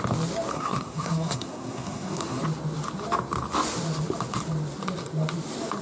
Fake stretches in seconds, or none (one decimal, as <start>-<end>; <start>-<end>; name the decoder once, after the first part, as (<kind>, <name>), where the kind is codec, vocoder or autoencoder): 0.5-2.4 (codec, SNAC)